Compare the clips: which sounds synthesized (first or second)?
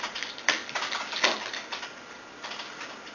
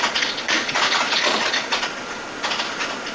second